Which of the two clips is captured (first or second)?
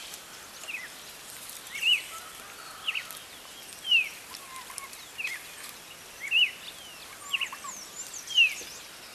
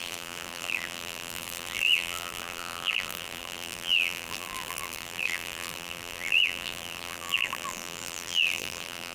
first